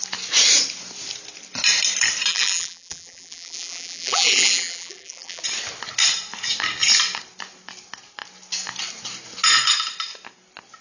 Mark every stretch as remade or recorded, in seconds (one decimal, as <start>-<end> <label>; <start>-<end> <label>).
0.0-2.3 recorded; 2.3-5.4 remade; 5.4-10.8 recorded